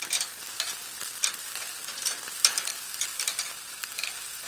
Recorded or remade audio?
recorded